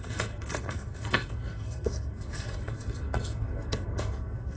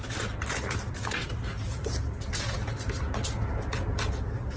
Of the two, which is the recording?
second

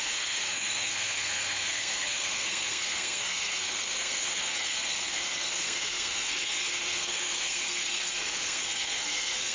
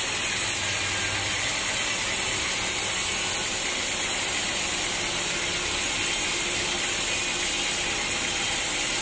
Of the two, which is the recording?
second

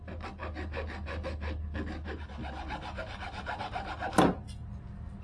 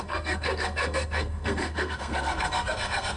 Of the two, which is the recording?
first